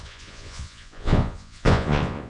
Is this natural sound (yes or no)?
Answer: no